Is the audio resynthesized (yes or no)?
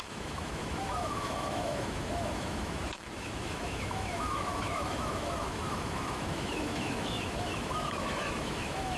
yes